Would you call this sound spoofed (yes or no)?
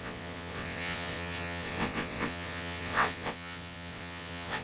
yes